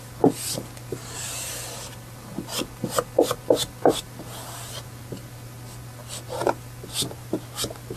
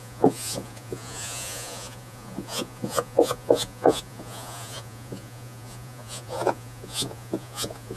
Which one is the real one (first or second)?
first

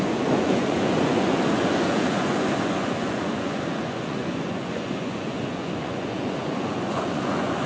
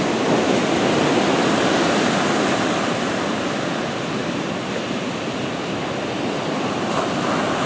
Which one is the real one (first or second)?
second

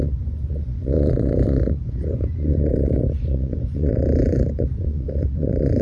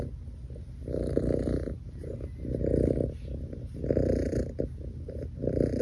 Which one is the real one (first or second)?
second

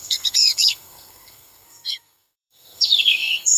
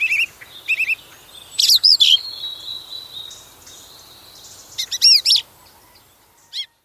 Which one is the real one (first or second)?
second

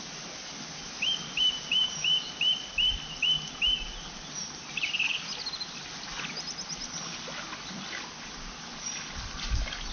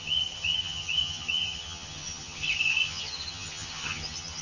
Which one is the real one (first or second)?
first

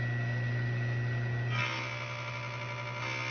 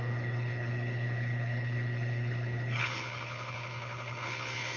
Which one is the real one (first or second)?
first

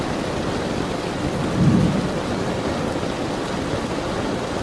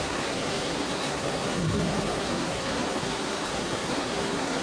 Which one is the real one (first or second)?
first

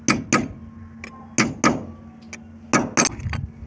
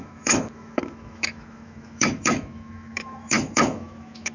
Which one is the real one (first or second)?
first